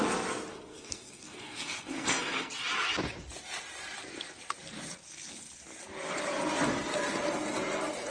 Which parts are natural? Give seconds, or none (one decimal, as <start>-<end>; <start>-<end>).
0.0-0.5; 2.5-8.1